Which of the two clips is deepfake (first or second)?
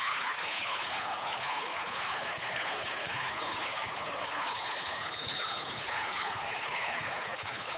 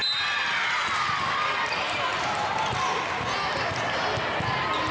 first